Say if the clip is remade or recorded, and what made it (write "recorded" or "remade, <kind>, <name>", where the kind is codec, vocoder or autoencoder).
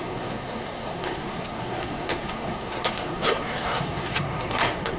remade, codec, SNAC